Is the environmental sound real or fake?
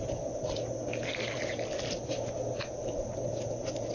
real